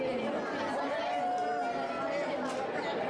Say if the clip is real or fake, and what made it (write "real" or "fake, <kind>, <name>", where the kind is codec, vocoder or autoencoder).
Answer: real